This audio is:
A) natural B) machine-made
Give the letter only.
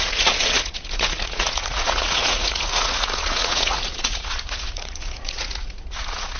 B